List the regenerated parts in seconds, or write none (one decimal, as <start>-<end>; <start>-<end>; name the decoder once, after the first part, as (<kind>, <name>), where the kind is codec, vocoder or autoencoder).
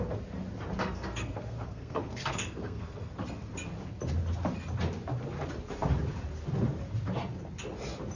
0.8-3.1 (codec, SNAC)